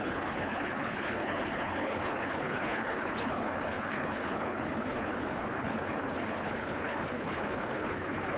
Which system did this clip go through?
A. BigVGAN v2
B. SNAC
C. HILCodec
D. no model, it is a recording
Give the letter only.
C